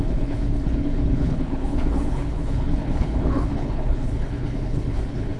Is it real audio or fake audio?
fake